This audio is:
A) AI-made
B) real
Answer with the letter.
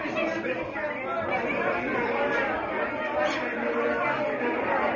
B